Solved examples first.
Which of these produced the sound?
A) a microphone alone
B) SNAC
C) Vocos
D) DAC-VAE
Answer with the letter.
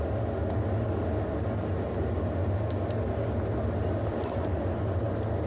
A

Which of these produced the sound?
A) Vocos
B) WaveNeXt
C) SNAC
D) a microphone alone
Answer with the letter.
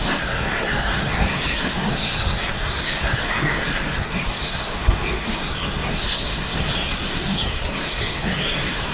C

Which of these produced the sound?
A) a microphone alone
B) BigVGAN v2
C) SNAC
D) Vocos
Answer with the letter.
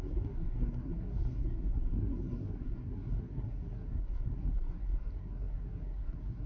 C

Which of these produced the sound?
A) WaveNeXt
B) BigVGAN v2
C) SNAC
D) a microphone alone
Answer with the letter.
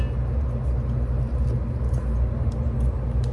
D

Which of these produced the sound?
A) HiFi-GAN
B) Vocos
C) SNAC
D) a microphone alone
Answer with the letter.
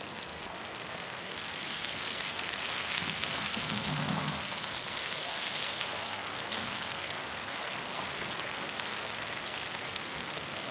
C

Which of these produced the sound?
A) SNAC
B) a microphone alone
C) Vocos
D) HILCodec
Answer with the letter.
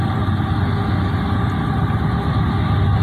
B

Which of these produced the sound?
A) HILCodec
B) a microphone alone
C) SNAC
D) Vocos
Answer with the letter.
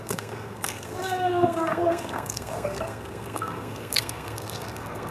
C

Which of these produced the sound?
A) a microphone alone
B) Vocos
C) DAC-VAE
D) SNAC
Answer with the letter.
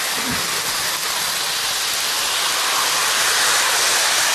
A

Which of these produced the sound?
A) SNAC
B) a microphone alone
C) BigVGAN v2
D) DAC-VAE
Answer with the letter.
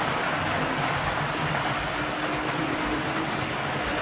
B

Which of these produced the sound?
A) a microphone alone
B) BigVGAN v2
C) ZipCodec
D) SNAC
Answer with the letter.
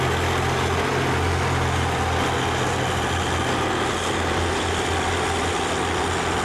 A